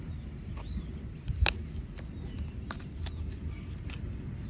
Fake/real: real